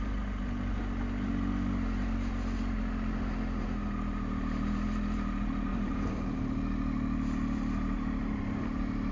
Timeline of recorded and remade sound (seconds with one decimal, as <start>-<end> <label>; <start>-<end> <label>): 0.0-5.7 recorded; 5.7-6.5 remade; 6.5-9.1 recorded